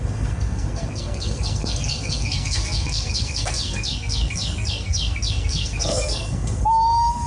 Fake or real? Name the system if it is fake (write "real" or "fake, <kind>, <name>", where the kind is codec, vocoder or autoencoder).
fake, codec, SNAC